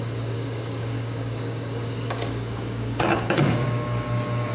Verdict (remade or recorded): remade